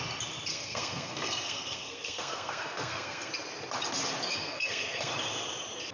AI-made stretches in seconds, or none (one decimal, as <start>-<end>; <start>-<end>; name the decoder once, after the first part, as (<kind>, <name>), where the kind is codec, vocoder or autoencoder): 0.5-3.3 (codec, SNAC); 4.3-5.1